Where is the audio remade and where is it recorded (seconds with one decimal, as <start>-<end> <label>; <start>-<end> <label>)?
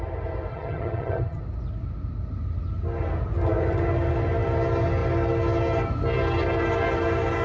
0.0-0.5 recorded; 0.5-1.4 remade; 1.4-7.4 recorded